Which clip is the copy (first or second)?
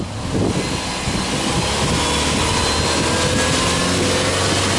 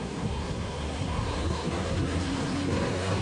second